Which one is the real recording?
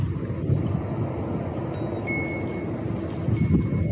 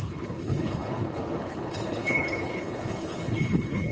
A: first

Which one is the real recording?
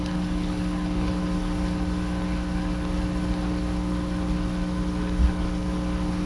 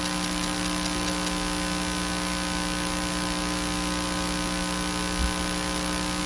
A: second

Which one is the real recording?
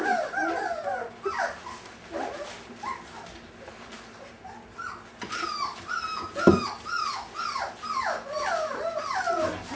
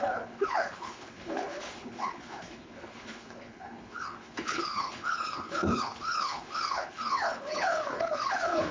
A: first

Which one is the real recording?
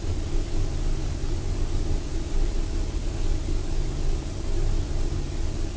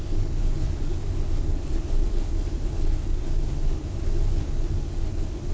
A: first